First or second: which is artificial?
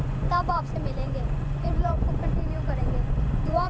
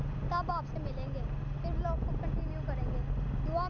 first